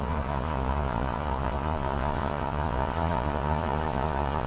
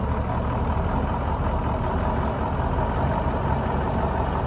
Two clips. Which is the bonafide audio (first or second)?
second